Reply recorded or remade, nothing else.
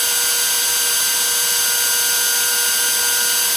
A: recorded